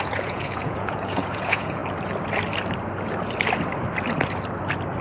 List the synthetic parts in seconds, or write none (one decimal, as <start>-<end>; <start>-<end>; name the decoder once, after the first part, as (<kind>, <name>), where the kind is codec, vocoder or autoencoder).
0.0-1.8 (vocoder, Vocos)